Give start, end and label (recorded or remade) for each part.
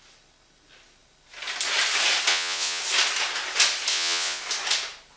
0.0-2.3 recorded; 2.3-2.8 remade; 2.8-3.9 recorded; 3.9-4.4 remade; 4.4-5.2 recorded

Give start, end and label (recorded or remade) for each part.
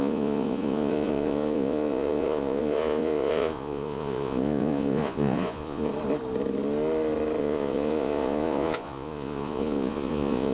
0.0-5.9 remade; 5.9-7.4 recorded; 7.4-10.5 remade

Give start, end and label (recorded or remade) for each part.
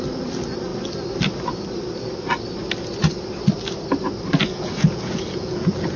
0.0-4.5 recorded; 4.5-6.0 remade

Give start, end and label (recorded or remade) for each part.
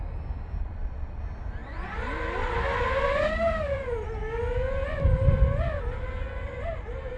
0.0-0.6 recorded; 0.6-1.2 remade; 1.2-7.2 recorded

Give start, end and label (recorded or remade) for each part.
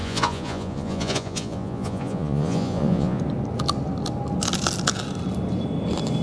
0.0-3.2 remade; 3.2-6.2 recorded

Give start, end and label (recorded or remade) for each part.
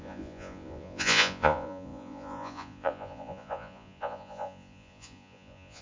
0.0-5.8 remade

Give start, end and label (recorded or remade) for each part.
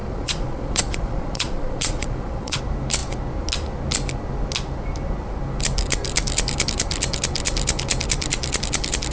0.0-2.6 remade; 2.6-9.1 recorded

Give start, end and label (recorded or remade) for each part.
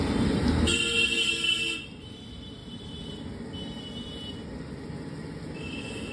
0.0-6.1 recorded